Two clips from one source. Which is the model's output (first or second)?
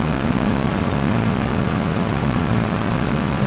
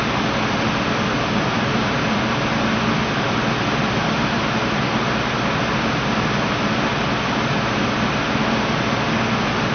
first